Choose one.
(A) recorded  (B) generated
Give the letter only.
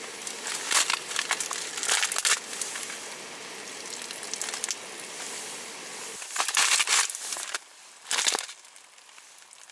A